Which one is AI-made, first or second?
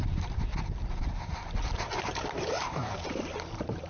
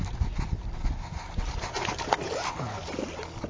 first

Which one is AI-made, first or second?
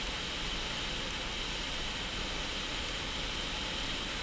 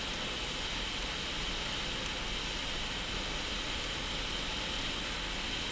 first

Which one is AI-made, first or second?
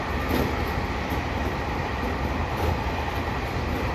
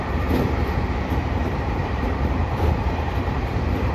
second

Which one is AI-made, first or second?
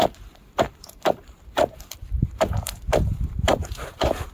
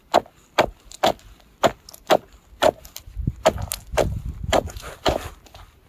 first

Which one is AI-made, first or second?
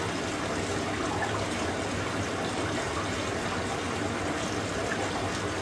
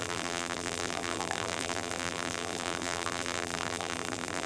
second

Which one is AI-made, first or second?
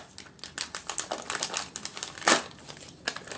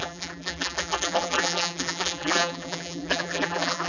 second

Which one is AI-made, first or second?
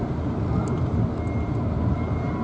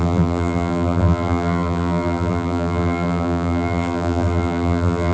second